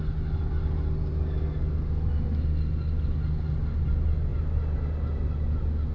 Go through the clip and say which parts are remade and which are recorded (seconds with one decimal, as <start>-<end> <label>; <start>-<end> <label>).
0.0-5.9 recorded